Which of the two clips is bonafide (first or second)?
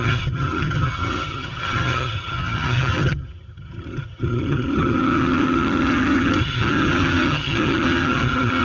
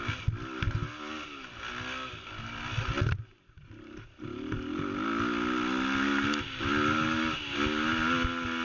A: second